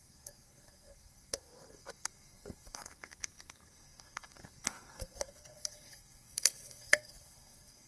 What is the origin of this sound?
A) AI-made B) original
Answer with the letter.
A